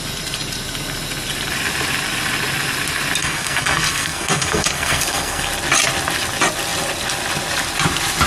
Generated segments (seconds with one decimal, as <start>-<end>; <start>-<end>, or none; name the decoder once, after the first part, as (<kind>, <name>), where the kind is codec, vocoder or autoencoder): 3.2-5.5 (codec, SNAC)